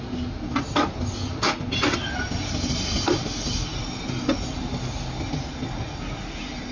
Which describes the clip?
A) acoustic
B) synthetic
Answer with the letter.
A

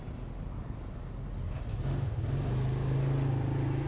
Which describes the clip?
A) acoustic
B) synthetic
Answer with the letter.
A